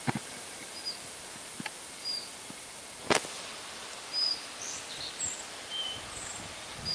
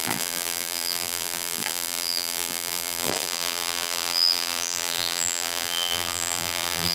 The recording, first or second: first